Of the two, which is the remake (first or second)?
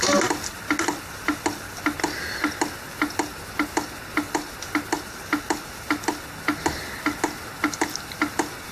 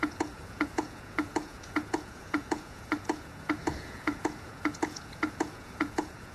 second